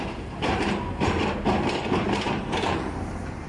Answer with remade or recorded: remade